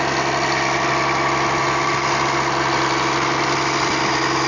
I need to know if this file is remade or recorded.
recorded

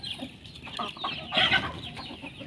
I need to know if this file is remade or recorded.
recorded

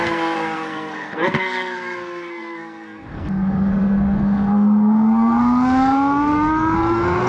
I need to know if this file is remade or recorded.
remade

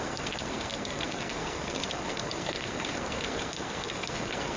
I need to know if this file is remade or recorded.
remade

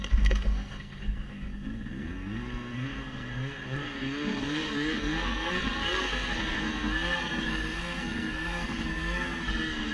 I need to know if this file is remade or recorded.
remade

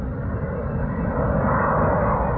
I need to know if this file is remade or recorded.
recorded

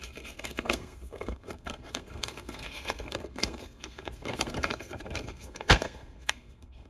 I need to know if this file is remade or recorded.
remade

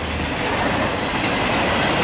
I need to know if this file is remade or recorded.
recorded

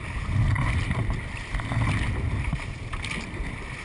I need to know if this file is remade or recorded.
recorded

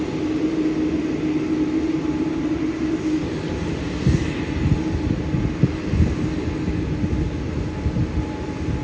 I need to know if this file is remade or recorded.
recorded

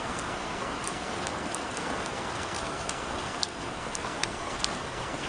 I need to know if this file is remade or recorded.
remade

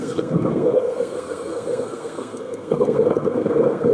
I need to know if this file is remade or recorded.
remade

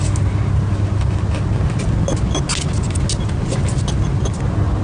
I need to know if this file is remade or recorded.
recorded